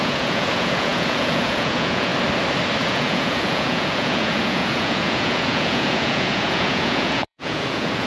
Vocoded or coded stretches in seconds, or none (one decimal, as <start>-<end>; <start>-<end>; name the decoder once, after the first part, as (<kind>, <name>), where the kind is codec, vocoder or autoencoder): 0.0-2.1 (vocoder, Vocos); 2.8-8.1